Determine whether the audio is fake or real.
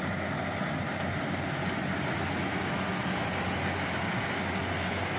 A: real